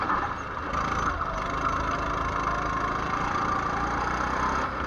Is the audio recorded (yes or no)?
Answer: yes